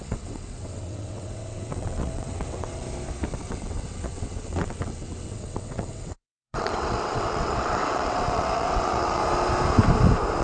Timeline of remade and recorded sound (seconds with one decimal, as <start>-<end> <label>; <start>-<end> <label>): 0.0-2.8 remade; 2.8-3.4 recorded; 3.4-9.2 remade; 9.2-10.4 recorded